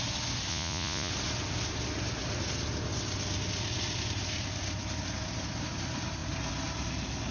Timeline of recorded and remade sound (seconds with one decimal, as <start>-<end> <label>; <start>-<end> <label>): 0.0-0.5 recorded; 0.5-1.1 remade; 1.1-7.3 recorded